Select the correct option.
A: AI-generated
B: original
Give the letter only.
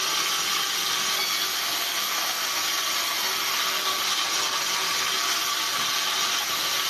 B